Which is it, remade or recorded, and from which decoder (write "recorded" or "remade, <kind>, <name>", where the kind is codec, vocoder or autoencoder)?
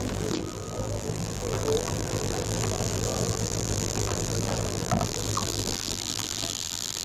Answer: remade, vocoder, BigVGAN v2